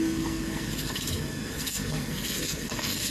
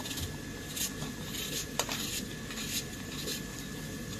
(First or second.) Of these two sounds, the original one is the second